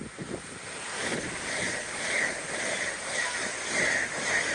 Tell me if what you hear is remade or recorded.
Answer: remade